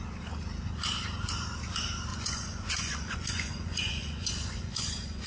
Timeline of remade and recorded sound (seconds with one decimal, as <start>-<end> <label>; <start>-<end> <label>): 0.0-2.1 recorded; 2.1-5.3 remade